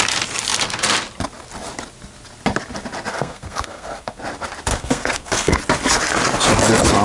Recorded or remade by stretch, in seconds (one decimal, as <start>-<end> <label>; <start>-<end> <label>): 0.0-3.1 recorded; 3.1-4.2 remade; 4.2-4.7 recorded; 4.7-5.6 remade; 5.6-7.0 recorded